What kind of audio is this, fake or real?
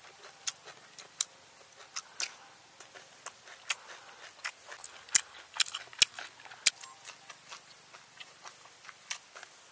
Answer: real